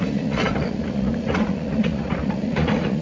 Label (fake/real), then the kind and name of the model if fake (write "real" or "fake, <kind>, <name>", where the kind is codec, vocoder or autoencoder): fake, vocoder, Vocos